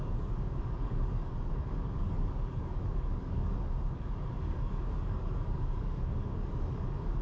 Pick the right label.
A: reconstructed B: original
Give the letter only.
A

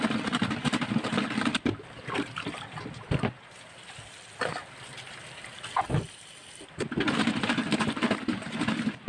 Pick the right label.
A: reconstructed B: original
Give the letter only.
B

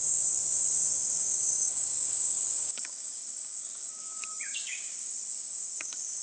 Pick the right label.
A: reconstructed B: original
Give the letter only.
A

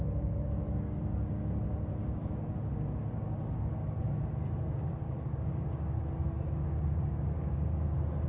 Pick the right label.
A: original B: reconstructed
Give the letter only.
B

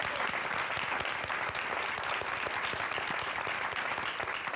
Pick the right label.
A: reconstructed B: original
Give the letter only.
B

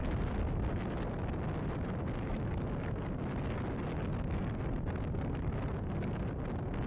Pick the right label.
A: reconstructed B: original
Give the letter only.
B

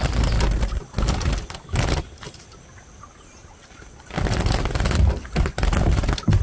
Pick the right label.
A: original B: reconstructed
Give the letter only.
A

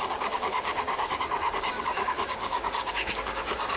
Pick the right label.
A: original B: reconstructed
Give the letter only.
B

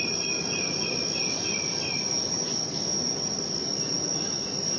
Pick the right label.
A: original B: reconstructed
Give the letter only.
A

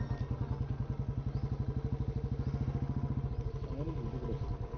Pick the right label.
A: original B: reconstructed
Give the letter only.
A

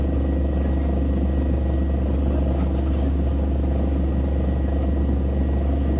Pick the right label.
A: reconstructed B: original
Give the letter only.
B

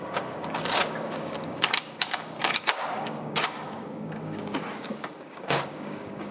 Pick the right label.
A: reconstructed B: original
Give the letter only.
A